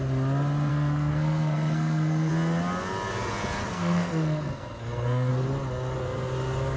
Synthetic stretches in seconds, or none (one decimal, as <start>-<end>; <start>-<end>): 0.7-2.3; 3.7-5.3